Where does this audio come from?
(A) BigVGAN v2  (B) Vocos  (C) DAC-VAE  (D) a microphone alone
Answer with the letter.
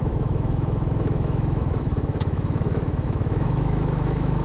C